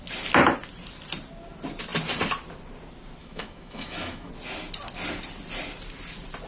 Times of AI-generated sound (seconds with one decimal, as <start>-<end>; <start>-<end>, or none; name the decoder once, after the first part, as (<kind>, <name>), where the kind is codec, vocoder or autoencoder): 3.2-4.3 (autoencoder, DAC-VAE)